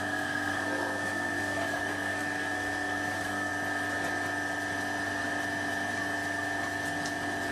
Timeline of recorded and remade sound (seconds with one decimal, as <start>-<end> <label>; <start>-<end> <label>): 0.0-3.5 remade; 3.5-7.5 recorded